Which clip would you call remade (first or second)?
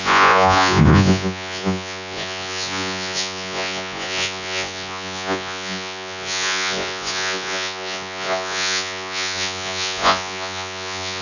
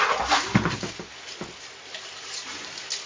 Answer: first